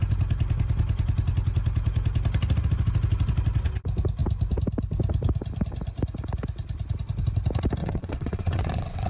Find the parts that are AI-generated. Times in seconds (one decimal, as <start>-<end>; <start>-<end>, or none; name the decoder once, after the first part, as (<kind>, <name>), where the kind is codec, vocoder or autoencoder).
7.8-9.1 (vocoder, WaveNeXt)